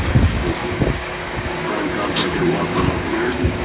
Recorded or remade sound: remade